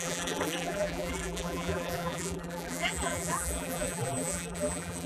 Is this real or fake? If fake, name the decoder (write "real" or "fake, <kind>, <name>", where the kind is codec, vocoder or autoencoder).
fake, vocoder, BigVGAN v2